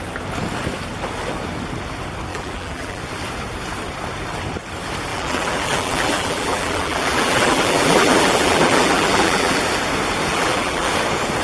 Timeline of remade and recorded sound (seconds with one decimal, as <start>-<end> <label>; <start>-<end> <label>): 0.0-2.3 recorded; 2.3-3.0 remade; 3.0-5.1 recorded; 5.1-9.6 remade; 9.6-10.3 recorded; 10.3-10.9 remade; 10.9-11.4 recorded